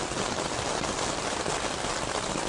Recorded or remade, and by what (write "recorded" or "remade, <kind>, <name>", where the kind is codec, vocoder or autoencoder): recorded